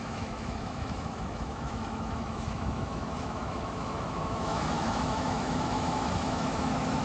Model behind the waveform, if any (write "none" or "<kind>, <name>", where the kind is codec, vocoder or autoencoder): autoencoder, DAC-VAE